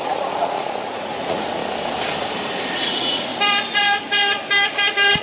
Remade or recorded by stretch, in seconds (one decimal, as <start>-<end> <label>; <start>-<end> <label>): 0.0-1.6 remade; 1.6-2.7 recorded; 2.7-3.3 remade; 3.3-5.2 recorded